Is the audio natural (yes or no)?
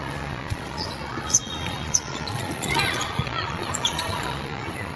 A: no